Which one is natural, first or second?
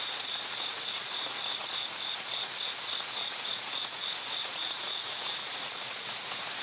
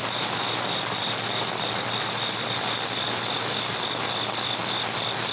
second